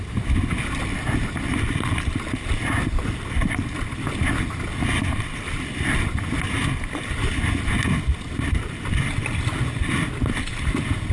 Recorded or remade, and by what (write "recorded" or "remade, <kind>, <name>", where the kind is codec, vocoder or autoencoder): recorded